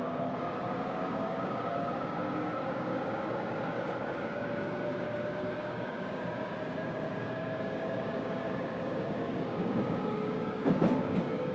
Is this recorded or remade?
remade